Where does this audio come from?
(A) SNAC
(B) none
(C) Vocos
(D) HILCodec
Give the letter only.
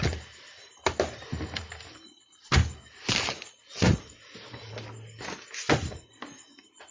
B